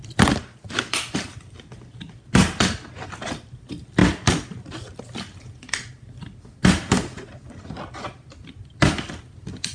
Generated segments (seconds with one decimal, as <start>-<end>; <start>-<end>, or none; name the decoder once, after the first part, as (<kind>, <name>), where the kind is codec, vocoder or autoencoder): none